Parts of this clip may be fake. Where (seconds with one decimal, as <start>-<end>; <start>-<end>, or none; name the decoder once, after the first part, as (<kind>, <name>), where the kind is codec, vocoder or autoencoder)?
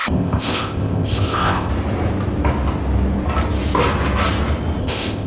0.0-1.7 (codec, ZipCodec); 4.8-5.3